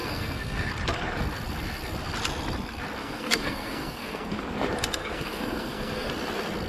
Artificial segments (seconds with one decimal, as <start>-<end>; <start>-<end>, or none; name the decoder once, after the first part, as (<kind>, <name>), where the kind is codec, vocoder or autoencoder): 0.0-0.7 (codec, SNAC); 3.0-4.4; 5.0-6.1

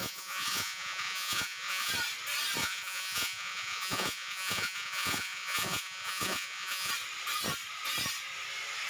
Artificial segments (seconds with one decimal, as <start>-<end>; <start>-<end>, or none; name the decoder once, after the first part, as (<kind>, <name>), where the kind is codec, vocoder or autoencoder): 0.0-1.9 (vocoder, Vocos); 2.6-6.9

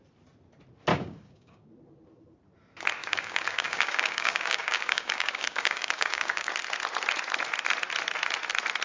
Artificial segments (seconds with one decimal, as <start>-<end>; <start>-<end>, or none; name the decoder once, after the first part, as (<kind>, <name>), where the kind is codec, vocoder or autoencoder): 0.9-1.7 (codec, DAC); 3.0-6.5

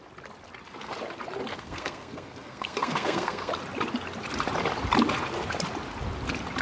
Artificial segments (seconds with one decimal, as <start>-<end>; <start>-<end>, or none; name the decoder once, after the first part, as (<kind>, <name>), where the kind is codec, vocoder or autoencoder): 1.5-3.5 (codec, SNAC)